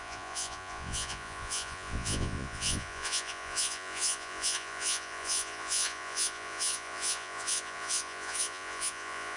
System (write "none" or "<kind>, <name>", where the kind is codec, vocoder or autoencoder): vocoder, Vocos